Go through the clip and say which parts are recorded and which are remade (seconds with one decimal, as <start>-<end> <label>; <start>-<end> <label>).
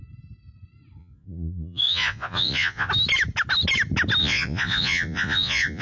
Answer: 0.0-1.0 recorded; 1.0-2.9 remade; 2.9-4.2 recorded; 4.2-5.8 remade